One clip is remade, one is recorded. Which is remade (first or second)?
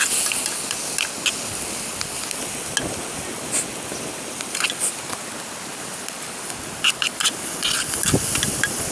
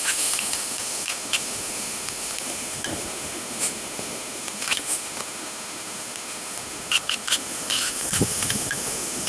second